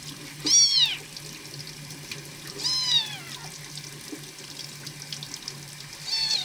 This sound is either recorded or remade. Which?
recorded